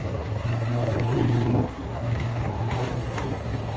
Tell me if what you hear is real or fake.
fake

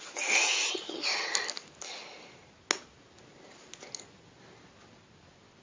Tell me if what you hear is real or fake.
real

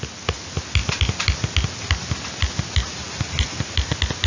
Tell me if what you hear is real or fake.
real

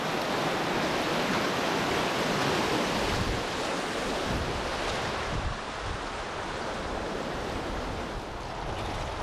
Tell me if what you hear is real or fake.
real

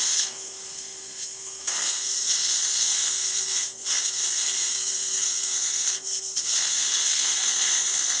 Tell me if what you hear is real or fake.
fake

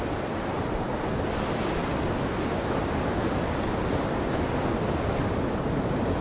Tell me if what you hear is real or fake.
real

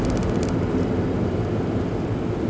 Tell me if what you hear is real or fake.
real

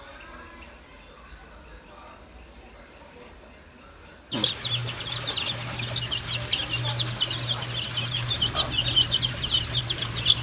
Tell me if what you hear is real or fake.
real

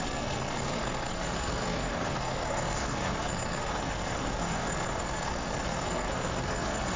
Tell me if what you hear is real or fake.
fake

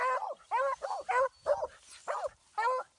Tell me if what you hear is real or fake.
real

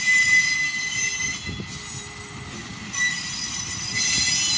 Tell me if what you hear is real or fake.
real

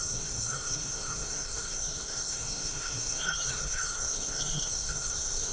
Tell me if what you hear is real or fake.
fake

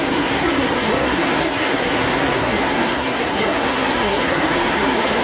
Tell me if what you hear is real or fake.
fake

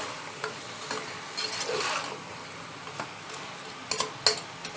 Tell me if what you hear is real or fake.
real